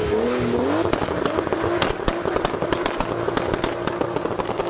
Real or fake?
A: real